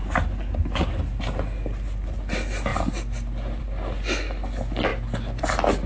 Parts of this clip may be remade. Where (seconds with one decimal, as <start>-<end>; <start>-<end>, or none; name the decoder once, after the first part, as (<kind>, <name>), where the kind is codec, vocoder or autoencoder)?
none